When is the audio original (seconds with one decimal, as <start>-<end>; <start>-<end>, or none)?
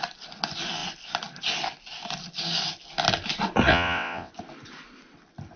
0.0-3.7; 4.3-5.6